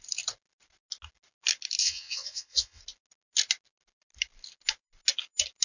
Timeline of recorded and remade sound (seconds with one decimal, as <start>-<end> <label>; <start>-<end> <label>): 0.0-1.8 recorded; 1.8-2.8 remade; 2.8-5.6 recorded